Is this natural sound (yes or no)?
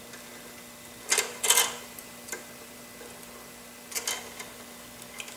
yes